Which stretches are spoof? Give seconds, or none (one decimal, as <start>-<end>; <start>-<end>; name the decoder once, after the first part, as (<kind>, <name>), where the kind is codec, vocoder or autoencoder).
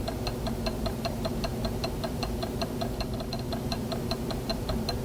0.8-5.0 (vocoder, BigVGAN v2)